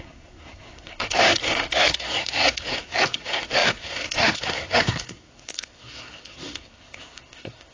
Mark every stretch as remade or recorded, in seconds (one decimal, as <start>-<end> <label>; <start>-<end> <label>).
0.0-7.7 remade